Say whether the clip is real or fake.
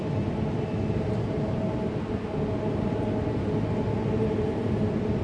real